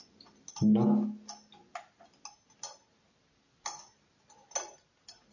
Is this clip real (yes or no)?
yes